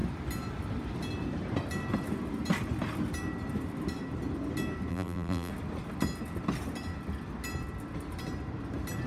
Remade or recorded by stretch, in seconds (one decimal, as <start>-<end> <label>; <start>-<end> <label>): 0.0-4.9 recorded; 4.9-5.5 remade; 5.5-9.1 recorded